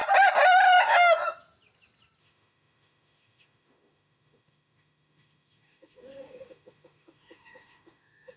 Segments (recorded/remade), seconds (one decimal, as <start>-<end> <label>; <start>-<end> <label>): 0.0-2.2 recorded; 2.2-8.4 remade